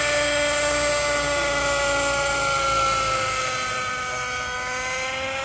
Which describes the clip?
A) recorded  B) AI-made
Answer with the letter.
A